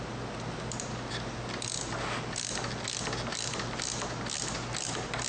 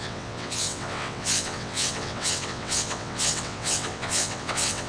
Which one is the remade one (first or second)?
second